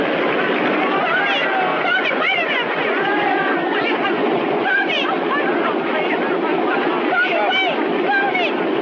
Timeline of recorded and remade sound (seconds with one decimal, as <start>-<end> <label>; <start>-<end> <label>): 0.0-1.7 recorded; 1.7-5.1 remade; 5.1-8.8 recorded